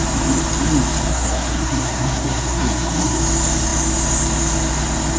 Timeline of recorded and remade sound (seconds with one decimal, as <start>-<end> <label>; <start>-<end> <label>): 0.0-1.1 recorded; 1.1-3.2 remade; 3.2-5.2 recorded